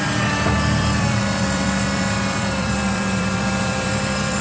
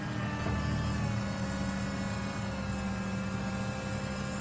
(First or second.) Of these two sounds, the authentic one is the second